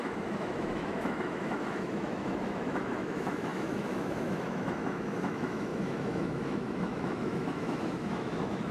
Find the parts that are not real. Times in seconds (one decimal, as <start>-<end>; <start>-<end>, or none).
0.0-8.7